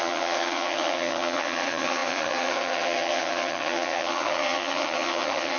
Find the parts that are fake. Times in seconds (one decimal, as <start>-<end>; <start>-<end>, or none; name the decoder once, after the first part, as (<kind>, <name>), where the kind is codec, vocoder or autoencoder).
0.0-5.6 (vocoder, HiFi-GAN)